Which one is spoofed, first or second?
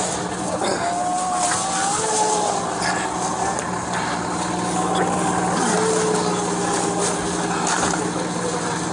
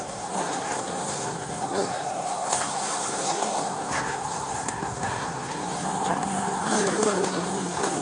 second